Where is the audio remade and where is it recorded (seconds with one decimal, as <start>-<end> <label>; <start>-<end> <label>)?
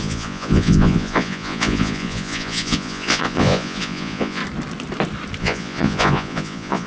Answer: 0.0-4.4 remade; 4.4-5.4 recorded; 5.4-6.9 remade